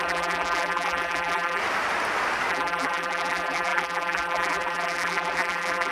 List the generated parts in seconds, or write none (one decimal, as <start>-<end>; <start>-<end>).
0.0-1.6; 2.5-5.9